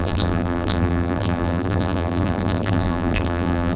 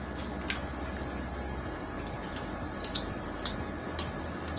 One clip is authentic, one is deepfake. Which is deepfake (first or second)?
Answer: first